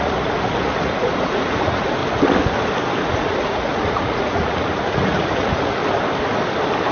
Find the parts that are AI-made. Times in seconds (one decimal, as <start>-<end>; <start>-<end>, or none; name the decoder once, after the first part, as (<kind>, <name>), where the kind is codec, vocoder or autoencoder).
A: 0.0-2.0 (vocoder, Vocos); 3.0-5.8